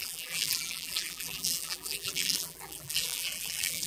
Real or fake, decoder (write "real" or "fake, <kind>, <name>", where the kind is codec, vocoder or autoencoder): fake, vocoder, BigVGAN v2